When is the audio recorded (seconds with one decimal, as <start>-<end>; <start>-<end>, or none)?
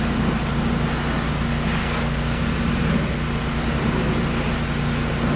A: 0.0-1.8; 2.4-5.4